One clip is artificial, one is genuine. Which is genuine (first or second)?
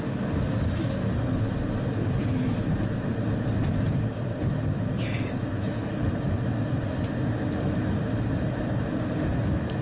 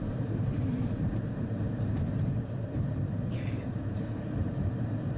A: first